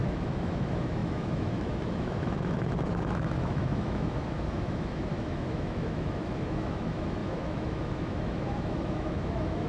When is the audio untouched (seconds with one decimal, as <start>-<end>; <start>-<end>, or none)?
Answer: none